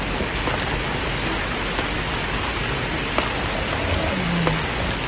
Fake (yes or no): no